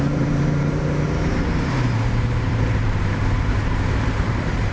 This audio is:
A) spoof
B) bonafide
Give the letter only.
A